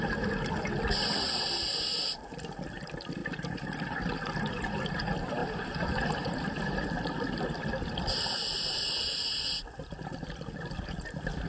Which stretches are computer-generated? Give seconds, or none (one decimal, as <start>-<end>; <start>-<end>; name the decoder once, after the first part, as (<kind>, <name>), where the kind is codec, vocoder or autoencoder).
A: 5.4-6.6 (vocoder, BigVGAN v2)